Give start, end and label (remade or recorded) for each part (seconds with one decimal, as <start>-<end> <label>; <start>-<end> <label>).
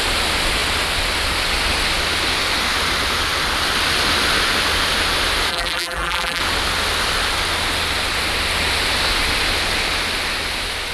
0.0-5.5 recorded; 5.5-6.4 remade; 6.4-10.9 recorded